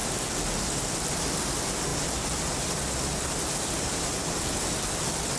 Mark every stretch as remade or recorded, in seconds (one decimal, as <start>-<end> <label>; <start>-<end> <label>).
0.0-5.4 recorded